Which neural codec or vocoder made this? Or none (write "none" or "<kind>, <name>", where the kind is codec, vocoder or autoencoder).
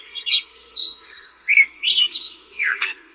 codec, SNAC